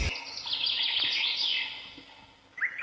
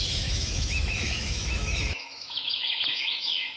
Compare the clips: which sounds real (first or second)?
first